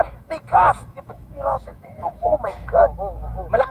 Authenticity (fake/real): fake